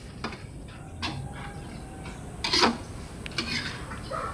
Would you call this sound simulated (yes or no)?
no